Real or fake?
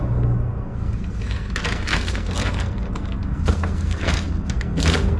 fake